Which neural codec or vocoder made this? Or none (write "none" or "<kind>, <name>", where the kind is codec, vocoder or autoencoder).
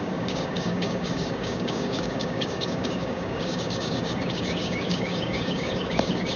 codec, DAC